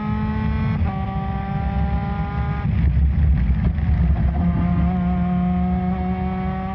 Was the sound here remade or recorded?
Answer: recorded